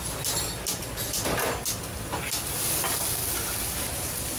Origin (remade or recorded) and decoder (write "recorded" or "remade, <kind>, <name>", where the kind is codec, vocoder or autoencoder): recorded